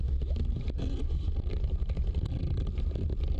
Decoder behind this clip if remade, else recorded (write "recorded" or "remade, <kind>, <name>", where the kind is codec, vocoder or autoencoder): recorded